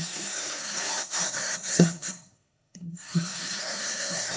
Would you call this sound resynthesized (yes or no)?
yes